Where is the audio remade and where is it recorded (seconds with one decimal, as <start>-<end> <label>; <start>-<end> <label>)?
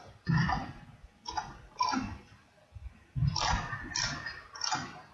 0.0-5.1 recorded